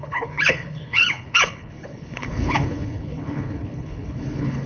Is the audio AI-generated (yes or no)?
yes